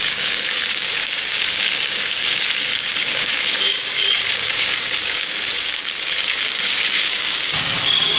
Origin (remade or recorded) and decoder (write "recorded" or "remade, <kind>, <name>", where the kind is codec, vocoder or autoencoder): remade, codec, DAC